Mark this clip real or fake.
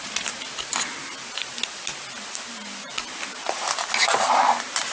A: real